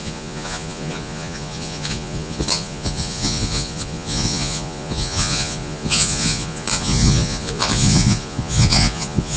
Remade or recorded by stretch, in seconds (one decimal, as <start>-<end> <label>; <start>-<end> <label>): 0.0-9.4 remade